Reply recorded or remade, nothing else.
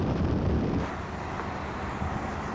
recorded